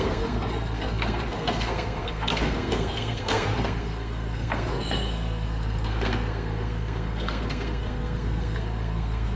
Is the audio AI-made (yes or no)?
yes